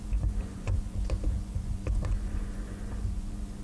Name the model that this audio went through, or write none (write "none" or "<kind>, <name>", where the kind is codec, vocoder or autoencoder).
vocoder, Vocos